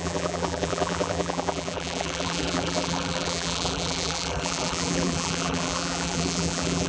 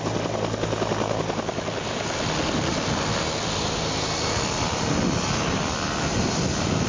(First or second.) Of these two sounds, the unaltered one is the second